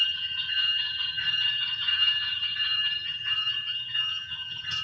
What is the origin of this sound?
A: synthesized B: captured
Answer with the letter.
A